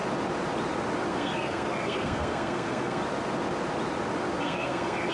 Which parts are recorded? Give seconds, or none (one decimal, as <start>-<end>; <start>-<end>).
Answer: 0.0-1.1; 3.0-4.4